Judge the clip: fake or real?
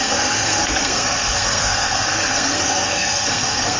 fake